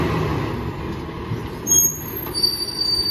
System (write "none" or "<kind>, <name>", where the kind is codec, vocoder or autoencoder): none